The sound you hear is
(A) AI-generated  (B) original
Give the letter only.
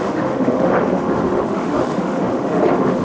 A